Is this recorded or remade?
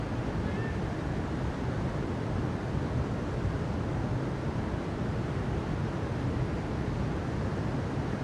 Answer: recorded